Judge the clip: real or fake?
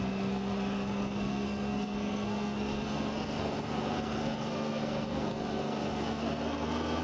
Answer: fake